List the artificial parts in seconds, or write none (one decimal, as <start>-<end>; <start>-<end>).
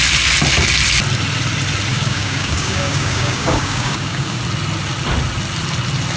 1.9-4.4